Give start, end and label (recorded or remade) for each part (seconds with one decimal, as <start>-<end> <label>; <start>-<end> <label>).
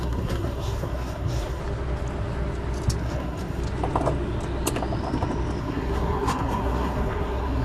0.0-1.6 remade; 1.6-3.0 recorded; 3.0-3.6 remade; 3.6-5.6 recorded; 5.6-7.6 remade